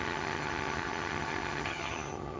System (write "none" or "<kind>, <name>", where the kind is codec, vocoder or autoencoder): vocoder, HiFi-GAN